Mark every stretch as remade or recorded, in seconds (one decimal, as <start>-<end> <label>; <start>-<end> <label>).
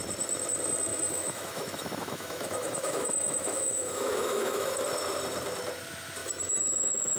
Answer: 0.0-0.9 recorded; 0.9-4.8 remade; 4.8-6.2 recorded; 6.2-7.2 remade